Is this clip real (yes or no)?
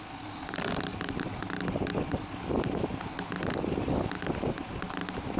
yes